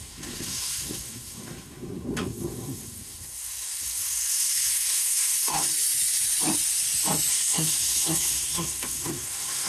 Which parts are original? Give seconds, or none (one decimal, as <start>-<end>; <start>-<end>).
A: 5.7-7.3